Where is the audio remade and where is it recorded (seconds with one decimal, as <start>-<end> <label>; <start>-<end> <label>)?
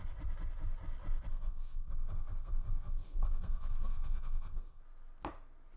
0.0-1.3 recorded; 1.3-4.8 remade; 4.8-5.8 recorded